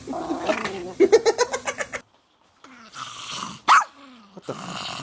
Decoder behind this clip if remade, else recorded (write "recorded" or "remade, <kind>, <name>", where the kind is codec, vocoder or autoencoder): recorded